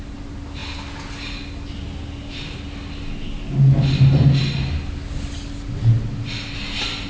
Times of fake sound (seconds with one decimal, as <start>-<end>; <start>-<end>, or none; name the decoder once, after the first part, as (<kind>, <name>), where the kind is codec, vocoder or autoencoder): none